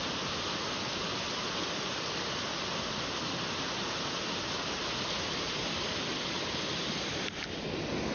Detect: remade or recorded recorded